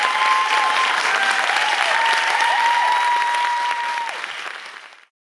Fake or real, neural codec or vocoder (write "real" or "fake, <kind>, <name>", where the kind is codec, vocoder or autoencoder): real